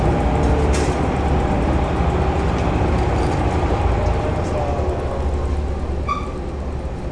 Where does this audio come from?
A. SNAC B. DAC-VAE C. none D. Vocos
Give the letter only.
C